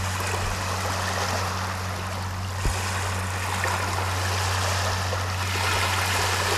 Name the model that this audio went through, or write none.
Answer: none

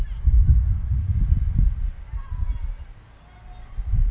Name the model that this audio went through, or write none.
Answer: none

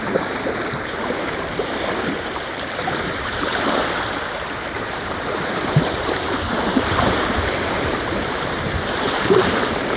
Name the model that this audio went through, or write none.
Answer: vocoder, BigVGAN v2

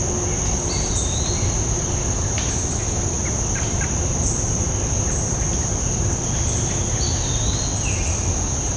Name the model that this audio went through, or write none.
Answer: none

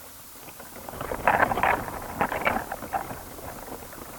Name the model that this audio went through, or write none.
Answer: none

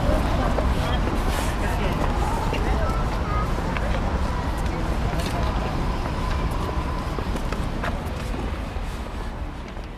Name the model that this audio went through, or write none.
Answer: none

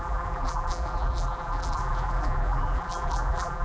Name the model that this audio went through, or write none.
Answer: vocoder, BigVGAN v2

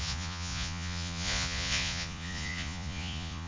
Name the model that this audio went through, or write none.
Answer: vocoder, Vocos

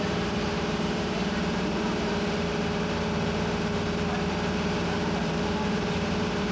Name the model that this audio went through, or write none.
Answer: vocoder, BigVGAN v2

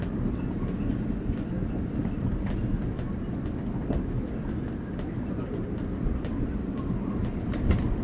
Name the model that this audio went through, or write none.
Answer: none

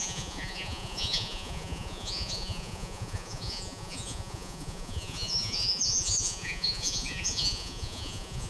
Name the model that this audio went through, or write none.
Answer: vocoder, Vocos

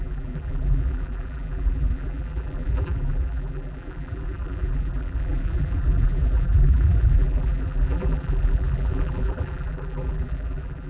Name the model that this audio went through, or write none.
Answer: vocoder, BigVGAN v2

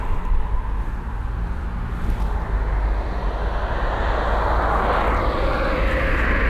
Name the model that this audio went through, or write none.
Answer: none